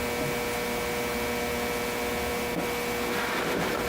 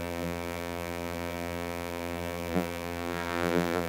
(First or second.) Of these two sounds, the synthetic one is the second